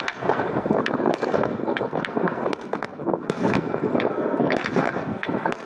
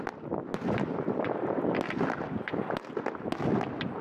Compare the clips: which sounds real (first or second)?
second